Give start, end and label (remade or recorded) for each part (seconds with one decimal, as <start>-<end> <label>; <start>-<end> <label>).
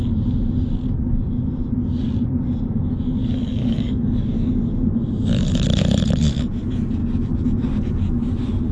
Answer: 0.0-3.2 recorded; 3.2-4.5 remade; 4.5-7.0 recorded; 7.0-8.0 remade; 8.0-8.7 recorded